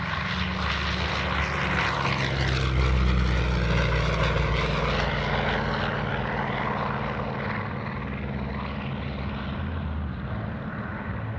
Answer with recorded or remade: recorded